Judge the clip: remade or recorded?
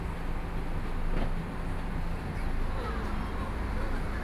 recorded